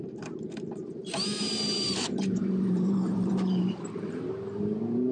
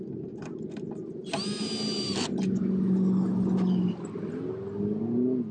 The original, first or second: second